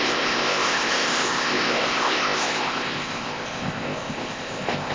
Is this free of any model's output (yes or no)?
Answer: no